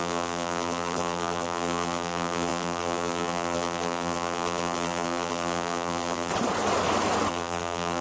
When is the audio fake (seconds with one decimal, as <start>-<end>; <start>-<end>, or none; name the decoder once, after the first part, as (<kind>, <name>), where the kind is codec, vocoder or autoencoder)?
0.0-6.3 (vocoder, BigVGAN v2); 7.3-8.0